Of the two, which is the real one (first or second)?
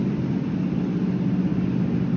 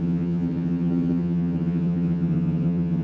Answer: first